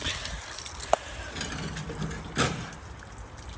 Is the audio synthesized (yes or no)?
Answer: no